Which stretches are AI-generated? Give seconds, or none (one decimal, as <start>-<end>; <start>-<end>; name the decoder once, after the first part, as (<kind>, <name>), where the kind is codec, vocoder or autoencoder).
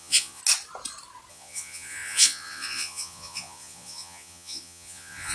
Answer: 0.0-0.4 (vocoder, Vocos); 1.3-5.3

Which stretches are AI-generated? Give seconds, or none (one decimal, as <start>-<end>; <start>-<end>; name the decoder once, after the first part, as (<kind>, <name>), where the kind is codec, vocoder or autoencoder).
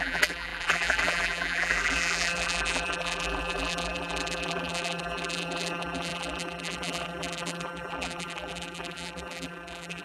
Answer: 0.0-10.0 (vocoder, BigVGAN v2)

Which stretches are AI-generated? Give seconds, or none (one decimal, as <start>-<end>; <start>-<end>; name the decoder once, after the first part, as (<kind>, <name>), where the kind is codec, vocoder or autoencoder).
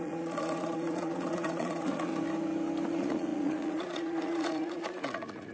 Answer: 0.0-2.1 (vocoder, Vocos); 2.9-5.5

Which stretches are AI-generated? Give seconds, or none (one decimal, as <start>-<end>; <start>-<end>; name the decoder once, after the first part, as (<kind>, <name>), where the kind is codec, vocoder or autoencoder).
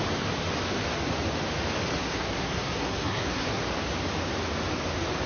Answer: 1.9-3.6 (codec, SNAC)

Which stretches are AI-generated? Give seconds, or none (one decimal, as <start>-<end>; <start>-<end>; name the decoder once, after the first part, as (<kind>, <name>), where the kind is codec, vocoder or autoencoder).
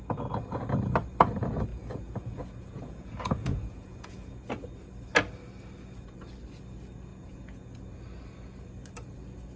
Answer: 1.7-4.4 (vocoder, Vocos); 7.1-7.9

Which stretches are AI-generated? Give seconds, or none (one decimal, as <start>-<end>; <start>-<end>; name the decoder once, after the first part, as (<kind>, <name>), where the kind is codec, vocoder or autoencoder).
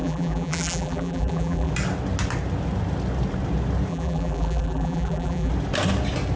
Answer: 0.0-1.7 (vocoder, BigVGAN v2); 3.9-5.5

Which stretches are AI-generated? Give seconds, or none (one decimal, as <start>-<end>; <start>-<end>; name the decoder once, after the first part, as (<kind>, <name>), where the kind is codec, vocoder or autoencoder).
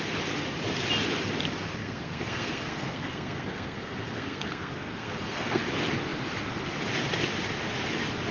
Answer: 1.8-5.6 (codec, SNAC)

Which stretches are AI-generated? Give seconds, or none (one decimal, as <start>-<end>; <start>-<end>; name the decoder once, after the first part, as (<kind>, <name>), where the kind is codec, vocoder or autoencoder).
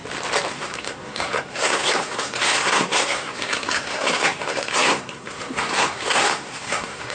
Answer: 0.5-7.1 (codec, SNAC)